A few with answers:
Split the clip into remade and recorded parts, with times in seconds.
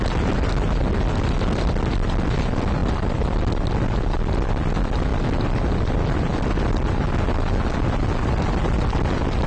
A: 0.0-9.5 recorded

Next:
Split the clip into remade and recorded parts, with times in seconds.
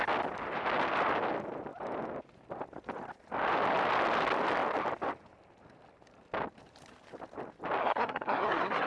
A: 0.0-7.8 recorded; 7.8-8.9 remade